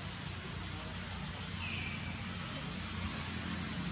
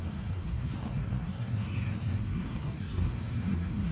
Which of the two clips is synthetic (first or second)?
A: second